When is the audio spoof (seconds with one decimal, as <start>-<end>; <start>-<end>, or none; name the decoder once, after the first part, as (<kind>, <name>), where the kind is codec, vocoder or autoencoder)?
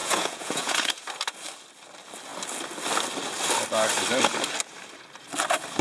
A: 0.0-1.0 (vocoder, Vocos)